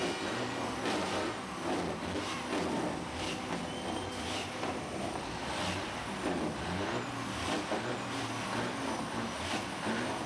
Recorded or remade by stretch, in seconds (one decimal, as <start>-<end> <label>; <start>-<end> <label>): 0.0-10.3 recorded